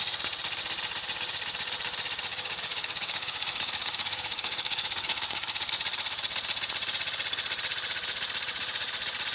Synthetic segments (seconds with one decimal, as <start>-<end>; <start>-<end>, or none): 2.3-5.7